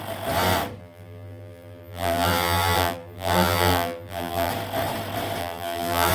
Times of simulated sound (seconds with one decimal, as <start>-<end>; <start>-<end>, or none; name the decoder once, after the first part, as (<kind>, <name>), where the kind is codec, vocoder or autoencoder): 0.8-4.5 (vocoder, BigVGAN v2); 5.4-6.1